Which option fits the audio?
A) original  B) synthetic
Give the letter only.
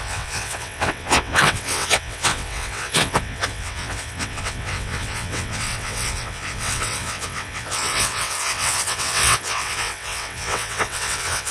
B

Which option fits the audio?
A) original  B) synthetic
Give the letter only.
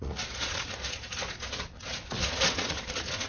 B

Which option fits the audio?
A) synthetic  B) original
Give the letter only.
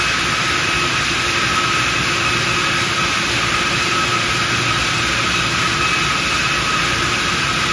B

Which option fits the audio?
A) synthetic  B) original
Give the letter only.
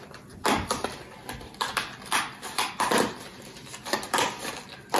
B